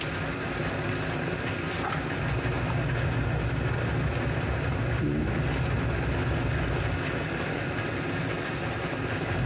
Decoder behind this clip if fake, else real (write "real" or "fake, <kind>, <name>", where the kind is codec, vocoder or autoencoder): real